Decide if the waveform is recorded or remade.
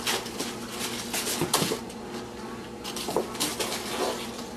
recorded